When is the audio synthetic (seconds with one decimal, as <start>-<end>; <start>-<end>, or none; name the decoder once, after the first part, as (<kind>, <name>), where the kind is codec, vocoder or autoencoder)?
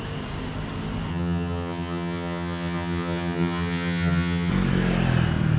1.1-4.5 (vocoder, HiFi-GAN)